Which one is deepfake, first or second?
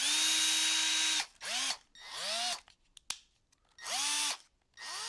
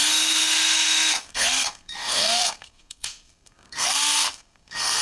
second